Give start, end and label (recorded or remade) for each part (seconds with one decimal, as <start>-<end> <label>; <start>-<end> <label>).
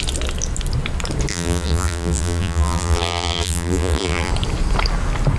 0.0-1.3 recorded; 1.3-4.3 remade; 4.3-5.4 recorded